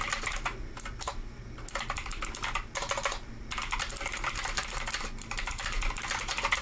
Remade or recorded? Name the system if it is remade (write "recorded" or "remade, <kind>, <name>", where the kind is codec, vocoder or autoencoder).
recorded